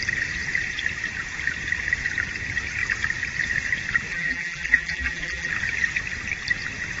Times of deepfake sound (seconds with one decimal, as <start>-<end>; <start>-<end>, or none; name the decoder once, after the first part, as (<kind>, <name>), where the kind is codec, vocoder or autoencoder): 4.1-5.5 (vocoder, BigVGAN v2)